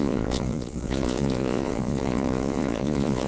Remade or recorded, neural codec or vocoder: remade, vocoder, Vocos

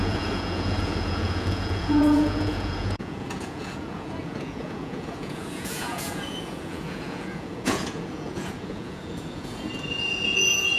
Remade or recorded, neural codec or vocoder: remade, vocoder, Vocos